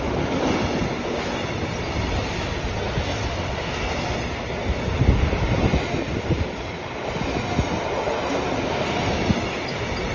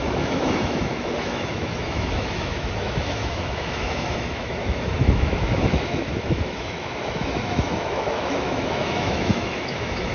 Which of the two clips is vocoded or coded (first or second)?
second